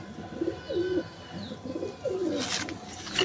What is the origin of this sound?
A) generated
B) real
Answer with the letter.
B